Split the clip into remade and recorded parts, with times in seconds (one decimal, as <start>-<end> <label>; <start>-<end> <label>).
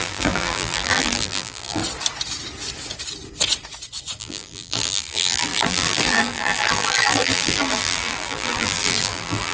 0.0-1.8 remade; 1.8-4.2 recorded; 4.2-9.5 remade